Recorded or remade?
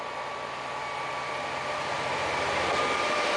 recorded